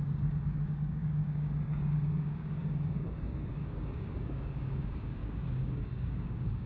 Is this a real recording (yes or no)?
no